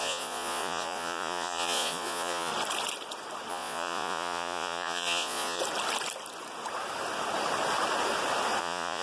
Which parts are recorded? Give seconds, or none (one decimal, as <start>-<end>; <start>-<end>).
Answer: 2.5-3.5; 5.6-8.6